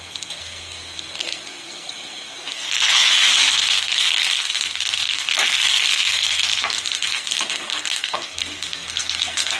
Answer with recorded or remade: remade